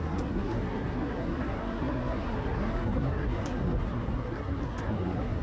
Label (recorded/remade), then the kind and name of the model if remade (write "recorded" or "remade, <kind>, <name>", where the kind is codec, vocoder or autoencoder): remade, codec, SNAC